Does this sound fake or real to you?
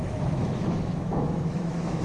fake